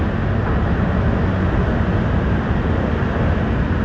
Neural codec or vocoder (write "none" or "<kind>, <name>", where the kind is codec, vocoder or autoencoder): none